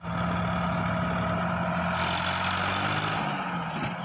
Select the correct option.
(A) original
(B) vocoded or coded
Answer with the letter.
A